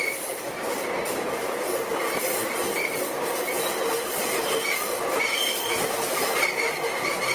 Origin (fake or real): real